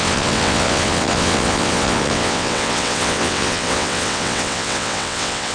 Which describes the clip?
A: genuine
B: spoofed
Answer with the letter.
B